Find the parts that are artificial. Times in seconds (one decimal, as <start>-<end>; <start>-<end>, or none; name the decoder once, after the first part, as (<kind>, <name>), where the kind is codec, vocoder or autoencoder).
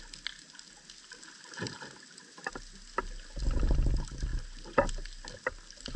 none